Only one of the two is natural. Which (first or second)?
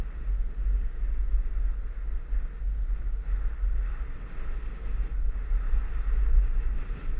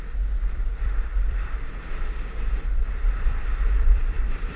first